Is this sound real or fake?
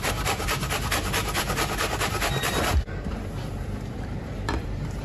fake